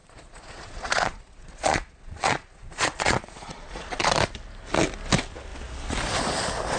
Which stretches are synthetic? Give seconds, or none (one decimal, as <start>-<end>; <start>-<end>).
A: 0.0-4.1